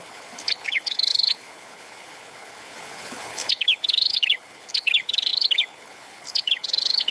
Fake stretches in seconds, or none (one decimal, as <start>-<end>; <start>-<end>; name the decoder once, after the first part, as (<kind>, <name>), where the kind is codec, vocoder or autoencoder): 0.0-7.1 (codec, HILCodec)